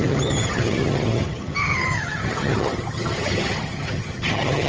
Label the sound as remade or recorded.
remade